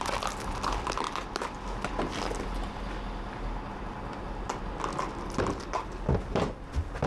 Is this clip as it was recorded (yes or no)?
yes